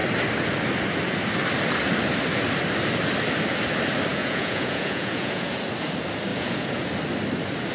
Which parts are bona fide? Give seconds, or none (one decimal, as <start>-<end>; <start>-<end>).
0.0-4.1; 5.6-6.3; 6.9-7.7